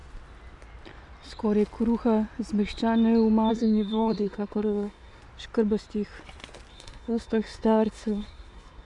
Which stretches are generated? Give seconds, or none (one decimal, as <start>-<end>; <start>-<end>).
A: 3.5-5.2; 6.7-8.8